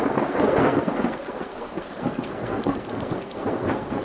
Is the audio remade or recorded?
remade